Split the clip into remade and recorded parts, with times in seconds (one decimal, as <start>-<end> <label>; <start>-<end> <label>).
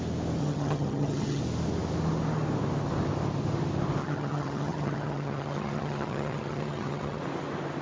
0.0-0.4 recorded; 0.4-1.4 remade; 1.4-4.0 recorded; 4.0-7.2 remade; 7.2-7.8 recorded